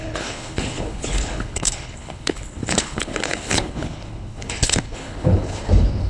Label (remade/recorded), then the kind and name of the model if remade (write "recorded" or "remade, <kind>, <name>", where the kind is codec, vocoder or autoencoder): remade, codec, HILCodec